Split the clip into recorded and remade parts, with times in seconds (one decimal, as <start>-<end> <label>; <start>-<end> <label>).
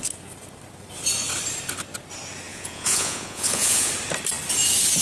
0.0-2.5 recorded; 2.5-3.9 remade; 3.9-5.0 recorded